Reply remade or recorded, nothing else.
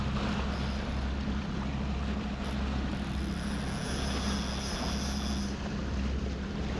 recorded